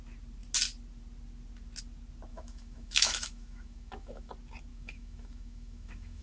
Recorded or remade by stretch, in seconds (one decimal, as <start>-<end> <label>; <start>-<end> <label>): 0.0-2.3 recorded; 2.3-4.3 remade; 4.3-4.7 recorded; 4.7-6.2 remade